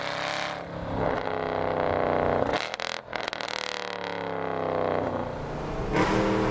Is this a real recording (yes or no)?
yes